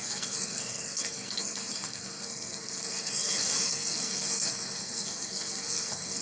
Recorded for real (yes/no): no